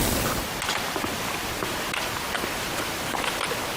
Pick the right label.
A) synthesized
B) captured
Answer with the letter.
B